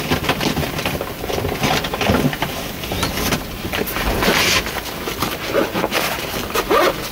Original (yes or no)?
yes